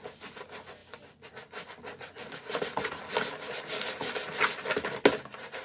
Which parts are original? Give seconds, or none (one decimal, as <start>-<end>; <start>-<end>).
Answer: 0.0-5.6